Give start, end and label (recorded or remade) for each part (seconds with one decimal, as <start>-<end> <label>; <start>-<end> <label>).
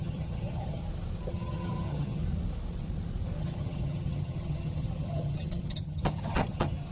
0.0-0.8 remade; 0.8-1.3 recorded; 1.3-2.2 remade; 2.2-3.4 recorded; 3.4-6.9 remade